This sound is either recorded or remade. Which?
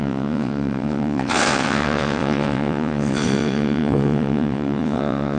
remade